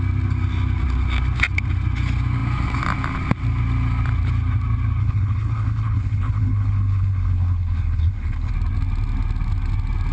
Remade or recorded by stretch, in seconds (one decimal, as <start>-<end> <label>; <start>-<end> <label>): 0.0-5.0 recorded; 5.0-8.5 remade; 8.5-10.1 recorded